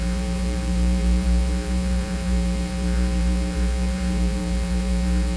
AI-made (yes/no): yes